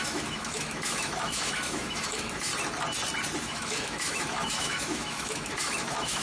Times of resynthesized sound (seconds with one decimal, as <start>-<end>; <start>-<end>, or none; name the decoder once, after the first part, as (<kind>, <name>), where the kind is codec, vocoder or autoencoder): 0.0-2.5 (autoencoder, DAC-VAE); 3.4-6.2

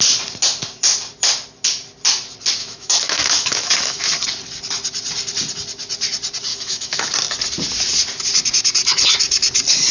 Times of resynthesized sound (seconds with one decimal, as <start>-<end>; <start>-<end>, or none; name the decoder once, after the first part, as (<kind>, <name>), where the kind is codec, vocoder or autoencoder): 2.6-4.0 (autoencoder, DAC-VAE); 6.5-7.1

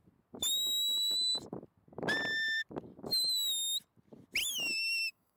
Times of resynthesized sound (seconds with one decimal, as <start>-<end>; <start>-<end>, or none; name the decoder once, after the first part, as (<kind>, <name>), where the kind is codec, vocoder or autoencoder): 4.4-5.4 (autoencoder, DAC-VAE)

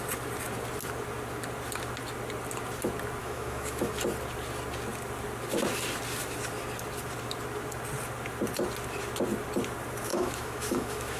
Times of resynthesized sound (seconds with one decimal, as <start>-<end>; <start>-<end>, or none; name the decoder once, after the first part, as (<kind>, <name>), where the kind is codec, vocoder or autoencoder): 3.2-3.9 (autoencoder, DAC-VAE); 10.1-11.2

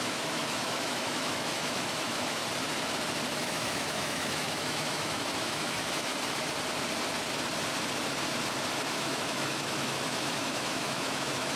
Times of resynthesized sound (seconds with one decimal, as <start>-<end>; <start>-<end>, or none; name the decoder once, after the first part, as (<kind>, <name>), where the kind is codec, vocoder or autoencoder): 0.0-2.4 (autoencoder, DAC-VAE); 3.3-6.1; 8.9-11.6

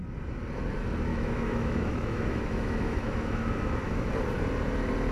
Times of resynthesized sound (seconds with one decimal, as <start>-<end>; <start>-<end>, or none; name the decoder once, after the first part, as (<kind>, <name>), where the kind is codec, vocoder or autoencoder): 1.1-4.1 (autoencoder, DAC-VAE)